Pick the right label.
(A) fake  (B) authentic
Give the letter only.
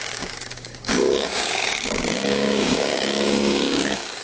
A